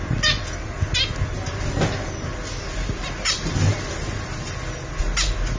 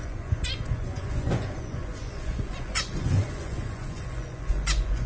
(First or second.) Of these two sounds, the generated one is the second